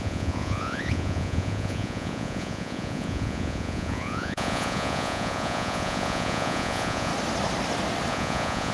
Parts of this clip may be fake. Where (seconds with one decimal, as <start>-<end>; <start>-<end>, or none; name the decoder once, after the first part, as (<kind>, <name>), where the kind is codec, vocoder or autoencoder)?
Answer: 0.0-7.1 (vocoder, Vocos); 8.1-8.7